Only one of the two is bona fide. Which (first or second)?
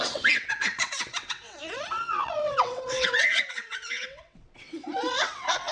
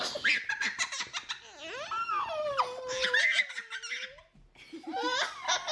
second